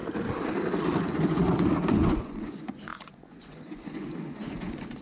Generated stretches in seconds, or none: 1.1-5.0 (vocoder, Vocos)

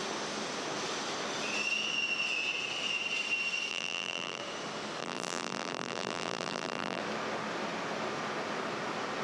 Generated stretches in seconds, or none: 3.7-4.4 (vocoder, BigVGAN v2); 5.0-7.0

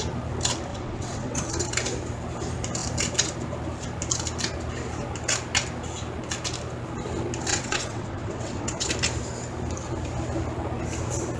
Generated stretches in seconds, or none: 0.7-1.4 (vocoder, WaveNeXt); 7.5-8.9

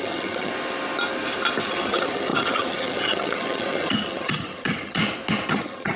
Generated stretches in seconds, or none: 0.0-0.5 (vocoder, HiFi-GAN); 1.6-5.0; 5.5-6.0

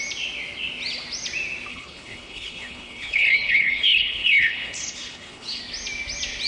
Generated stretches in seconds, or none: 1.7-5.6 (codec, HILCodec)

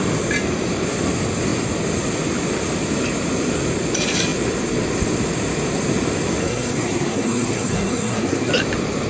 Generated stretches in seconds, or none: 6.4-8.5 (codec, SNAC)